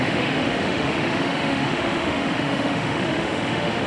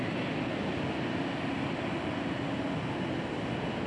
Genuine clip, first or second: second